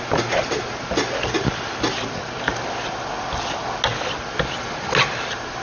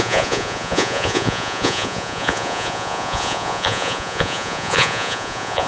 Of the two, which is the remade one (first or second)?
second